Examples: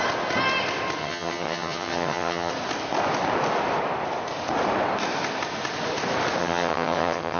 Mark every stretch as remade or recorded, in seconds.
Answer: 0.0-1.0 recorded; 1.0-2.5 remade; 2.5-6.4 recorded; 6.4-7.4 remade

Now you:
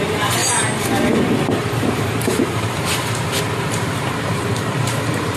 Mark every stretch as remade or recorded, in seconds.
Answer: 0.0-0.4 remade; 0.4-1.5 recorded; 1.5-5.4 remade

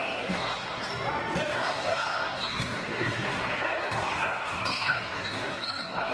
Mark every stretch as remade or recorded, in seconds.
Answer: 0.0-0.9 remade; 0.9-1.5 recorded; 1.5-6.1 remade

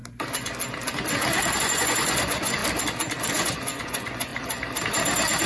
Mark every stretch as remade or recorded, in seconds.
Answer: 0.0-1.6 recorded; 1.6-2.6 remade; 2.6-3.3 recorded; 3.3-4.3 remade; 4.3-5.5 recorded

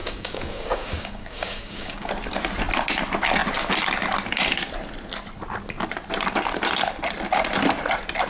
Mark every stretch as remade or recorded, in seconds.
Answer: 0.0-2.1 remade; 2.1-8.3 recorded

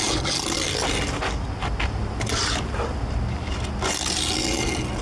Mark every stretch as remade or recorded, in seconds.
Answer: 0.0-5.0 recorded

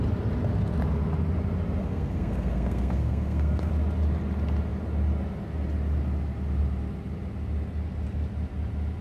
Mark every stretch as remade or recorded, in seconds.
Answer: 0.0-1.8 recorded; 1.8-3.7 remade; 3.7-9.0 recorded

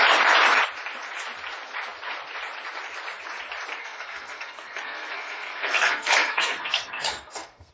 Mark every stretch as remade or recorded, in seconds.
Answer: 0.0-3.8 recorded; 3.8-7.7 remade